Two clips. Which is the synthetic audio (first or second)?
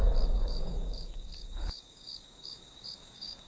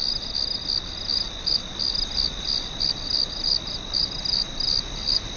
first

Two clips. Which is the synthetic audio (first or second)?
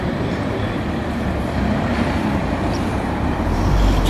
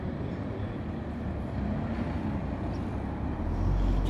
first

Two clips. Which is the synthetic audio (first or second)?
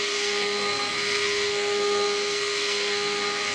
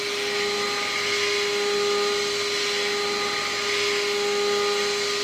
first